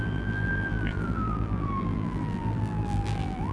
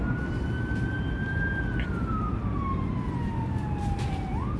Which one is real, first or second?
second